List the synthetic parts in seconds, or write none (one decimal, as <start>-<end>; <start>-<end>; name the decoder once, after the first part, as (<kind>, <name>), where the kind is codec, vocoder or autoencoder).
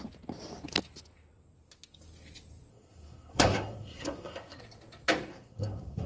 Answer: 2.7-4.6 (codec, SNAC); 5.3-6.1